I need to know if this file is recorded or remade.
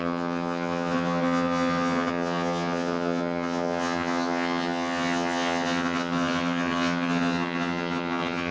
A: remade